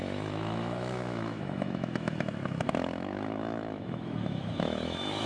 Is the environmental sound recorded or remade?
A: remade